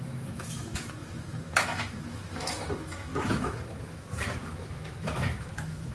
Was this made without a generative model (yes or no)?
no